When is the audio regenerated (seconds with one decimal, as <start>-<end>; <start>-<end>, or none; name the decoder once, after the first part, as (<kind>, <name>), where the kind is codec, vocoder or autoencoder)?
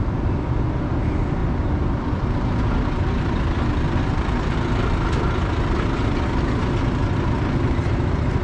none